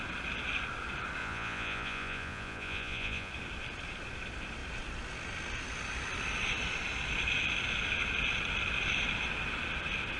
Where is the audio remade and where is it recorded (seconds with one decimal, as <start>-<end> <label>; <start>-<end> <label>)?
0.0-1.2 recorded; 1.2-3.3 remade; 3.3-10.2 recorded